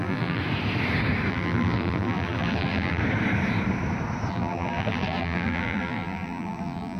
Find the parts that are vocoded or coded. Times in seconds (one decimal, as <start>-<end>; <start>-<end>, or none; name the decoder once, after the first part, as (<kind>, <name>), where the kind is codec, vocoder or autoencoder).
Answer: 0.0-0.4 (vocoder, BigVGAN v2); 1.3-3.0; 4.3-7.0